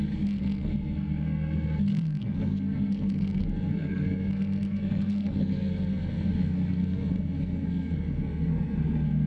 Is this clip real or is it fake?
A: fake